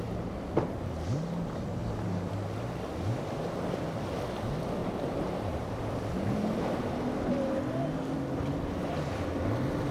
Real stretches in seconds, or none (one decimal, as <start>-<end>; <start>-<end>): 0.0-1.8; 2.3-4.8; 6.1-9.9